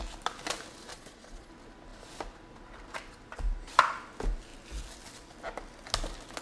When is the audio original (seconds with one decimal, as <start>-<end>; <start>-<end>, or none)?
0.0-0.9; 1.5-6.4